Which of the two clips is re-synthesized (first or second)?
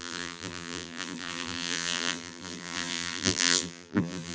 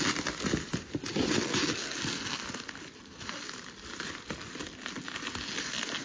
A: first